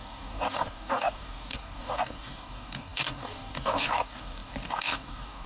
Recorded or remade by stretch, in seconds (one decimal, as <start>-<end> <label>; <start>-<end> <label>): 0.0-5.5 remade